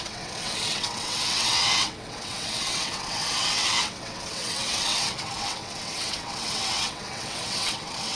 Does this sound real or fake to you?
fake